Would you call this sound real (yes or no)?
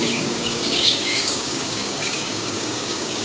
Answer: no